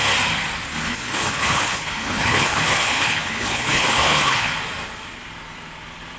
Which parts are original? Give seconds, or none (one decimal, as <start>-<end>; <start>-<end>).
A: 0.0-0.8; 4.5-6.2